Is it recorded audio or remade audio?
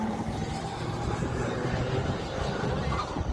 remade